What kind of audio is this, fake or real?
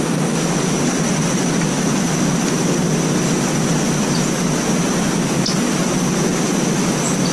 real